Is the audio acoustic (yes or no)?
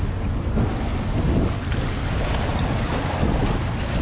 yes